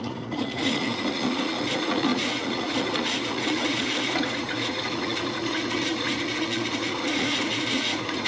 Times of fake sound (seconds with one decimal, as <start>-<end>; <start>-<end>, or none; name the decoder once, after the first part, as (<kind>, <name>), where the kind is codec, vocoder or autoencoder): 0.0-8.3 (vocoder, Vocos)